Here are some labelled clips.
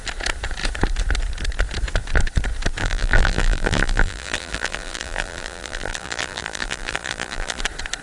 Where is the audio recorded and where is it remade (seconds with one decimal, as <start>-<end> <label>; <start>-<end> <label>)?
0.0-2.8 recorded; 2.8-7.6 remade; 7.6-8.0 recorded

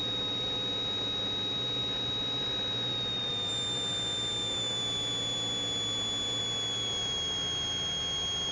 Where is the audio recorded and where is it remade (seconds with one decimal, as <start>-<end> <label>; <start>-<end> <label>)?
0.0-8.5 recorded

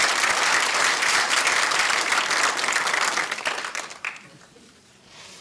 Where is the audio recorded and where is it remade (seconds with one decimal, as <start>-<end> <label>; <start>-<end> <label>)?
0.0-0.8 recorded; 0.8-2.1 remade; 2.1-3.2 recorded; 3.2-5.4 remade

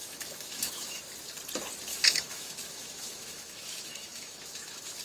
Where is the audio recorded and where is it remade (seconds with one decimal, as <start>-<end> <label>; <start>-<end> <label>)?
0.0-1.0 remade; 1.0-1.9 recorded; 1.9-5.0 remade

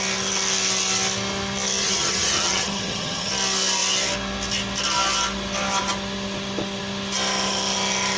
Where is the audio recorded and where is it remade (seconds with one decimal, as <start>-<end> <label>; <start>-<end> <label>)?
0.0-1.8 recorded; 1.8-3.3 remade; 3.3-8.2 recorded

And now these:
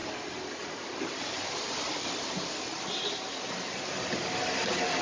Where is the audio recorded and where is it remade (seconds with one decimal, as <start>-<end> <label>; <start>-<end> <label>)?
0.0-5.0 recorded

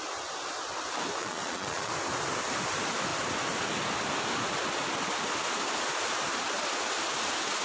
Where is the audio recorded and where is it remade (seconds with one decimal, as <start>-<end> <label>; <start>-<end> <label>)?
0.0-1.2 recorded; 1.2-1.9 remade; 1.9-7.6 recorded